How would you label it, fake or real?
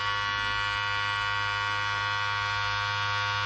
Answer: real